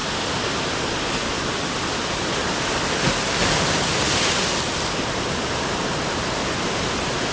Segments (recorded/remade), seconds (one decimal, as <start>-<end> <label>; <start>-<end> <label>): 0.0-7.3 recorded